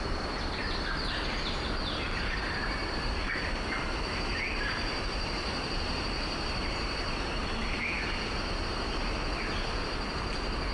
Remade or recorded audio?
remade